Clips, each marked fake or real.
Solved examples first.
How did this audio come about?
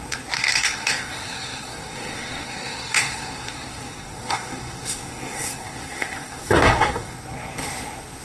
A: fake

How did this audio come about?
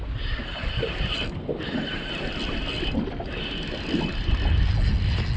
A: real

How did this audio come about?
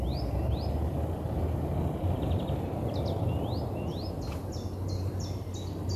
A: real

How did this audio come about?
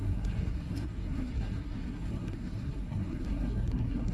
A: fake